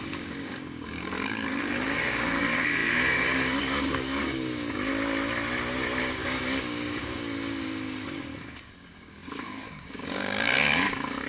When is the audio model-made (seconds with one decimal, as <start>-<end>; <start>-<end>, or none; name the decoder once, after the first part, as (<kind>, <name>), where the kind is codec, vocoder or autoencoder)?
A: 0.0-4.9 (codec, DAC); 6.0-11.3